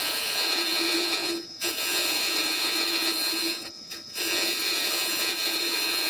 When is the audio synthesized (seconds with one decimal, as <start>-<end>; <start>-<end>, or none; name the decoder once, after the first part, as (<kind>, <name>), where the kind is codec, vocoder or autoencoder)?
0.0-6.1 (vocoder, Vocos)

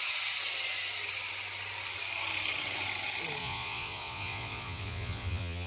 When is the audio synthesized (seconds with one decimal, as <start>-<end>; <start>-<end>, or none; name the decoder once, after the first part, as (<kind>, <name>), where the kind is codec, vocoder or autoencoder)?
3.4-5.7 (vocoder, Vocos)

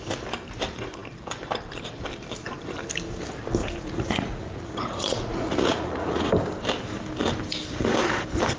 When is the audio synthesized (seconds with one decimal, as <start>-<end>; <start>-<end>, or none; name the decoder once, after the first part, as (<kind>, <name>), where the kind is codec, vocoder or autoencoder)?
3.6-6.3 (vocoder, Vocos)